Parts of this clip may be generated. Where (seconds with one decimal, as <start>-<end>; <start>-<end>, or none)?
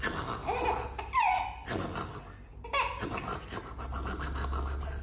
2.9-3.4